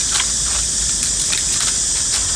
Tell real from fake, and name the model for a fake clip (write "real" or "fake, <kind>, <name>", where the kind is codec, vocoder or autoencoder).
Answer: real